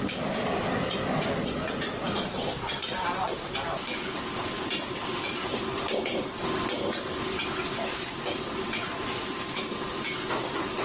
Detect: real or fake fake